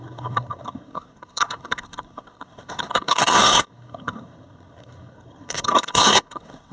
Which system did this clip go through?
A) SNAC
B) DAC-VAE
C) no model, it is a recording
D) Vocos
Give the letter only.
A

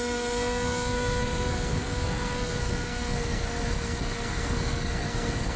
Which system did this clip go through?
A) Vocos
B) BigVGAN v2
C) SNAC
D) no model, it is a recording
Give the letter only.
C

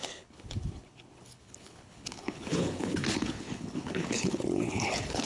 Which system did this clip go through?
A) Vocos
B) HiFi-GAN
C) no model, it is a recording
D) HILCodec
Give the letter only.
D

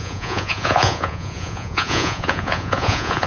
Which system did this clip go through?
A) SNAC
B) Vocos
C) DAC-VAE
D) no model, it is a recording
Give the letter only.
B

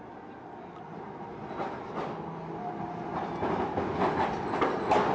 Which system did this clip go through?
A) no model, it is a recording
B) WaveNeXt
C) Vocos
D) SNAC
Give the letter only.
A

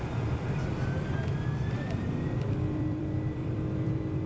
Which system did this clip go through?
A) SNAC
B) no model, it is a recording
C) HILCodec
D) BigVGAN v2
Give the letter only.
D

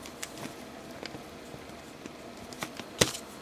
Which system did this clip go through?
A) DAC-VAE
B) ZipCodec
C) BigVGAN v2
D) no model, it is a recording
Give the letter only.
D